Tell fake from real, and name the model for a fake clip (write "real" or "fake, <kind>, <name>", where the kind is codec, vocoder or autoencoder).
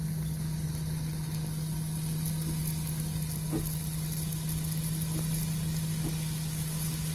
real